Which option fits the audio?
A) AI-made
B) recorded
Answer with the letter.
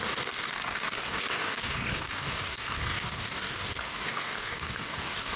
A